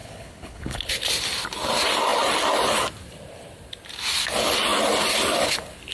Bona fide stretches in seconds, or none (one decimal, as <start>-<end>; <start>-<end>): 0.9-5.9